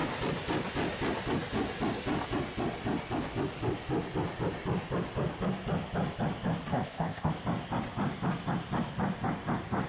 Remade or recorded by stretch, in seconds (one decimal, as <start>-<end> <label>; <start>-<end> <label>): 0.0-6.7 recorded; 6.7-7.3 remade; 7.3-9.9 recorded